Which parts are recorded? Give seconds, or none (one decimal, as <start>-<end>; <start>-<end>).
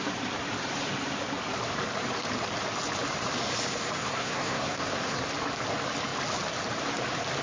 0.0-4.0; 5.3-7.4